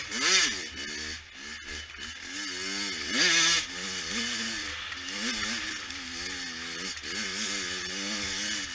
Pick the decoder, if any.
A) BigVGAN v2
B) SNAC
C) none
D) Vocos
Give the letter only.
C